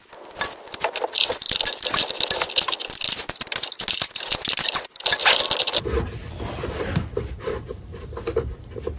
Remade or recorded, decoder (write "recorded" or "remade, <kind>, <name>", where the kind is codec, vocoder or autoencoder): recorded